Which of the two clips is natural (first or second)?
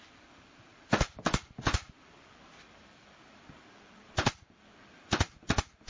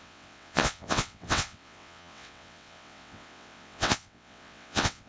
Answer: first